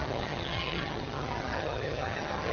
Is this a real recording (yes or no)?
no